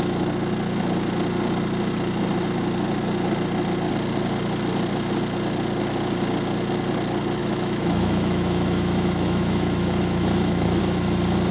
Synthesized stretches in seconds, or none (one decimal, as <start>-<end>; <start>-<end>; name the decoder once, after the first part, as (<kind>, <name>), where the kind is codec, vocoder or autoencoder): 7.4-10.8 (autoencoder, DAC-VAE)